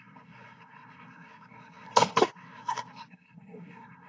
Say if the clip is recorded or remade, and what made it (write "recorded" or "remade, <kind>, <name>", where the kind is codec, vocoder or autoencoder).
remade, codec, SNAC